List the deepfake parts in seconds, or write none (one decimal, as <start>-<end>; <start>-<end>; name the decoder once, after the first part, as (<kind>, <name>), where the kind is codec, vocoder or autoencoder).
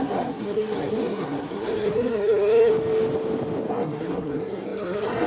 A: 0.0-2.7 (codec, SNAC); 3.7-5.3